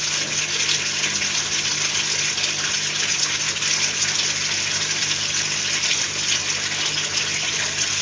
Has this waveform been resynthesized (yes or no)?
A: no